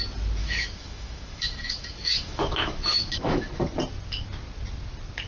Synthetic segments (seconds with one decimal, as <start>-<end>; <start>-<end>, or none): 0.4-3.6